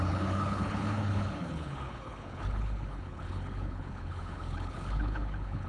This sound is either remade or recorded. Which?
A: remade